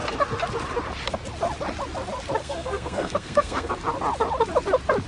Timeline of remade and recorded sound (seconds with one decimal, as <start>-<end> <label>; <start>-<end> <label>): 0.0-2.4 recorded; 2.4-3.7 remade; 3.7-5.1 recorded